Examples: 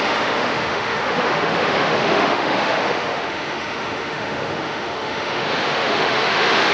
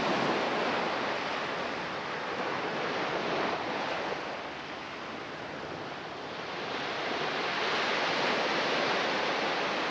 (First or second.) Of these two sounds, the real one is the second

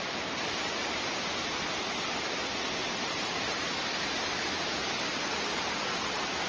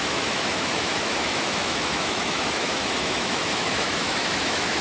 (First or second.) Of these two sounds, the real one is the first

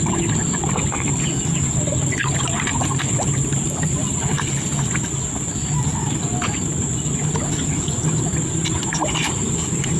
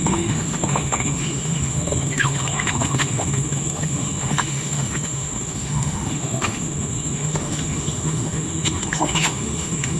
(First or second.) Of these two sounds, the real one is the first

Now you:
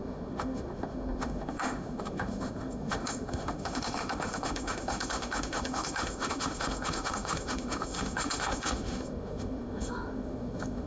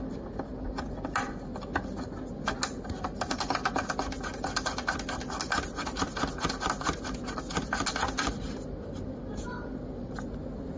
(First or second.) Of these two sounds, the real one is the second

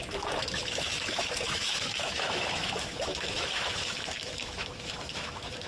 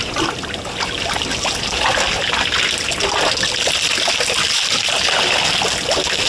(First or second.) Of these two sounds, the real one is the second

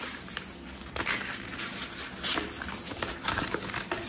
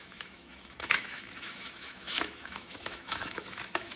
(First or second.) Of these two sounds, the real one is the first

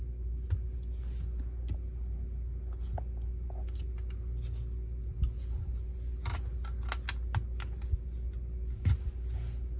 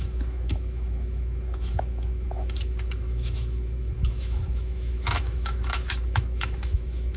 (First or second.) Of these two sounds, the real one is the first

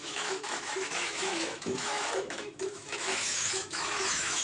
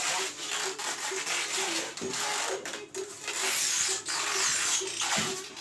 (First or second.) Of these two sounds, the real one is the second